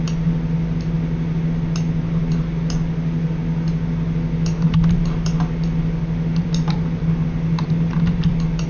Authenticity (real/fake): real